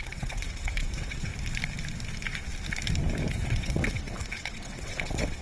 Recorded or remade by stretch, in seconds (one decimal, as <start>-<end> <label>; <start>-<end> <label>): 0.0-1.3 remade; 1.3-3.3 recorded; 3.3-5.4 remade